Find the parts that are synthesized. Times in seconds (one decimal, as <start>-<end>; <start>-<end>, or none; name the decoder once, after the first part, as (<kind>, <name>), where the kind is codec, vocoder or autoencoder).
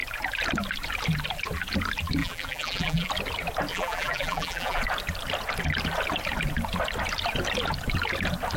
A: 2.2-3.1 (vocoder, BigVGAN v2); 3.7-4.8